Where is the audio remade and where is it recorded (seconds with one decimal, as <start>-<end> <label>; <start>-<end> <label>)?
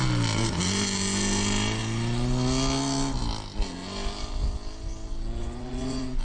0.0-5.4 recorded; 5.4-6.2 remade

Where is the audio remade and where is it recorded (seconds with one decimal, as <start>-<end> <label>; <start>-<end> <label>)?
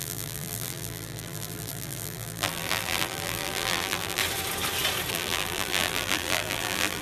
0.0-4.2 remade; 4.2-5.1 recorded; 5.1-7.0 remade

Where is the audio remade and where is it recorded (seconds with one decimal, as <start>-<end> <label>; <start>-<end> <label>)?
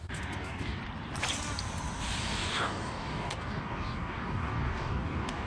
0.0-0.8 remade; 0.8-2.2 recorded; 2.2-5.5 remade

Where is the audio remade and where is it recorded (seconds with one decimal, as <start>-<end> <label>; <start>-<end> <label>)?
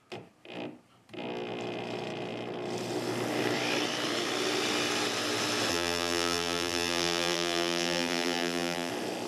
0.0-5.7 recorded; 5.7-8.9 remade; 8.9-9.3 recorded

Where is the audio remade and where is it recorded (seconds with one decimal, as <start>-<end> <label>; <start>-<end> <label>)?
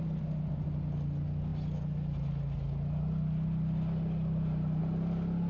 0.0-5.5 recorded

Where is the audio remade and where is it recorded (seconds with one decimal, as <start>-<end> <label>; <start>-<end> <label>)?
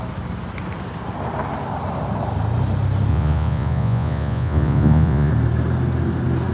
0.0-3.1 recorded; 3.1-5.3 remade; 5.3-6.5 recorded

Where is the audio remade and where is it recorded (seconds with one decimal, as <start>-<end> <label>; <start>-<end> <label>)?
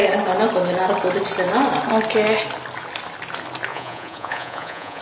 0.0-3.7 recorded; 3.7-5.0 remade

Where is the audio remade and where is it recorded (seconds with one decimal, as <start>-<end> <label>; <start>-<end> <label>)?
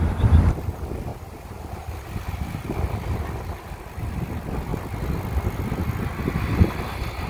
0.0-1.1 recorded; 1.1-1.9 remade; 1.9-7.3 recorded